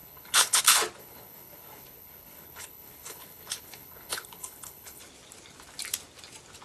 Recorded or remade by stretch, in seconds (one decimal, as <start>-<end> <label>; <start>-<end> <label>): 0.0-0.6 remade; 0.6-1.0 recorded; 1.0-5.0 remade; 5.0-6.6 recorded

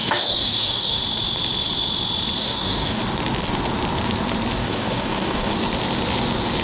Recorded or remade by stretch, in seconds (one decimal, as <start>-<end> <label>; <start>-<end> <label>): 0.0-1.0 remade; 1.0-2.4 recorded; 2.4-3.0 remade; 3.0-4.6 recorded; 4.6-5.5 remade; 5.5-6.6 recorded